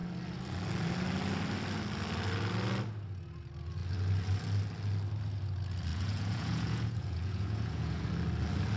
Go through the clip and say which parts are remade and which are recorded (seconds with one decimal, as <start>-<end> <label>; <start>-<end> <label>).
0.0-5.9 recorded; 5.9-8.1 remade; 8.1-8.8 recorded